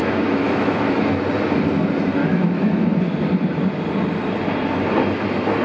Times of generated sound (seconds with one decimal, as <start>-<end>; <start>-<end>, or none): 0.0-1.2; 2.2-3.0